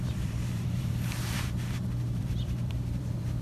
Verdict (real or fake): fake